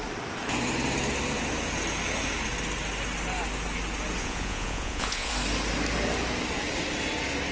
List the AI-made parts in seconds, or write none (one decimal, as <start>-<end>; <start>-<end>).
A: 4.2-5.3